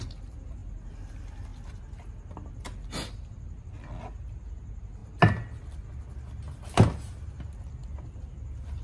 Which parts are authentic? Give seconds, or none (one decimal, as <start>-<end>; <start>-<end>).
0.0-8.8